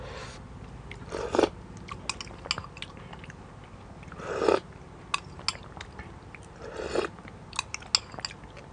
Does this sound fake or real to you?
real